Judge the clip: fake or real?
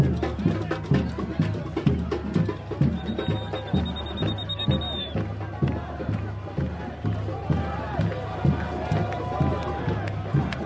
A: real